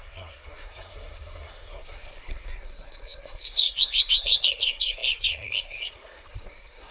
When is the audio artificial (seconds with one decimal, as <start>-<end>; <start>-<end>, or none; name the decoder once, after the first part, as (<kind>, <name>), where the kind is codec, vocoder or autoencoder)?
0.0-6.9 (codec, SNAC)